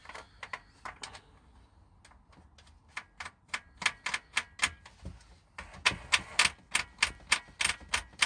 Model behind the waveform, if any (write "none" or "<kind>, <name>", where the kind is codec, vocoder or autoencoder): none